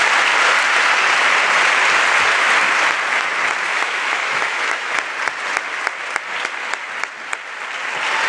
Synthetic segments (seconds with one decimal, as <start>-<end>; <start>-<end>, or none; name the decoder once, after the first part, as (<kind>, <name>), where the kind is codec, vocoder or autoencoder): 3.7-4.9 (autoencoder, DAC-VAE)